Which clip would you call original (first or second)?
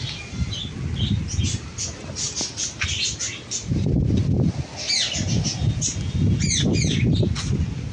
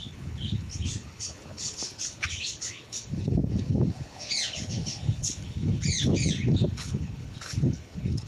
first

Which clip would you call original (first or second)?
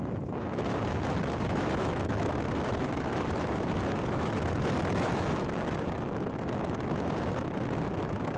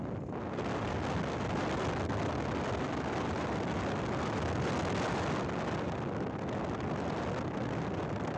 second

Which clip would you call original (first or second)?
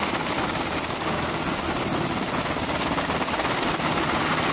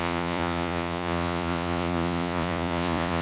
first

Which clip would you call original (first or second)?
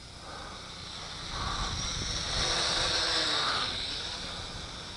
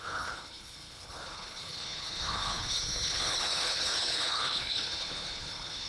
first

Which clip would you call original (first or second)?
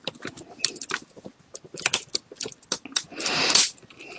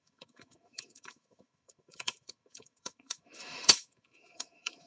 first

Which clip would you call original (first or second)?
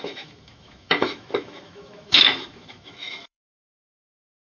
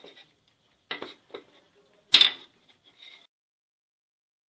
second